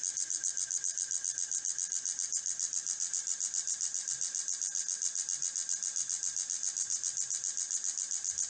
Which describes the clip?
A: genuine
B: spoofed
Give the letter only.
A